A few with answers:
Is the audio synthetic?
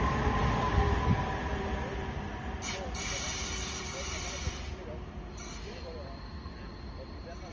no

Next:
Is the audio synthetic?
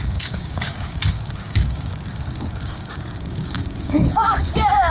yes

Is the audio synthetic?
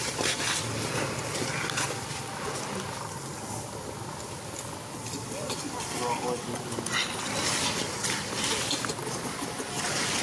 no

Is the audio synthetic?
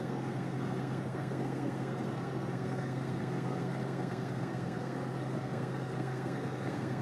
yes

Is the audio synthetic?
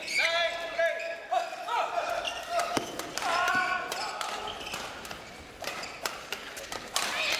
no